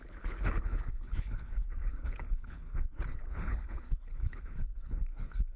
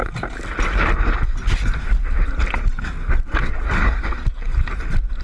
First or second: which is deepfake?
first